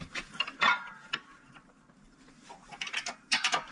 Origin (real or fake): fake